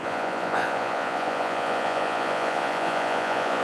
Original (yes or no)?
no